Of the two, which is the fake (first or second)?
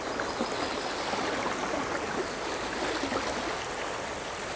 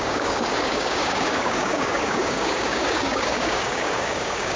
second